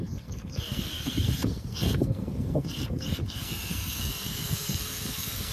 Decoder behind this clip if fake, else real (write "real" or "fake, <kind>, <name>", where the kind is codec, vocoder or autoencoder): fake, codec, SNAC